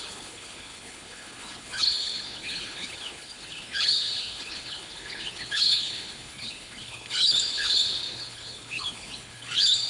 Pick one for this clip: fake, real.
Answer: fake